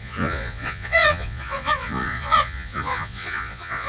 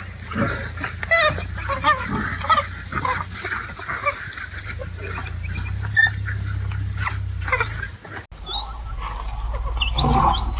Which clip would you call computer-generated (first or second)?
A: first